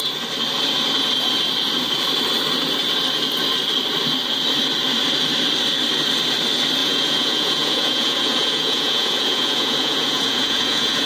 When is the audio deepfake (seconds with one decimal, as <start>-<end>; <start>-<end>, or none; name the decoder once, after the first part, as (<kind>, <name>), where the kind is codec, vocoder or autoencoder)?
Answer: 6.8-11.1 (vocoder, Vocos)